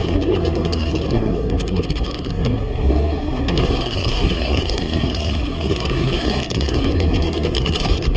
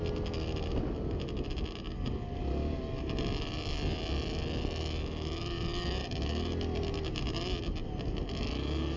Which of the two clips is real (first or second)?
second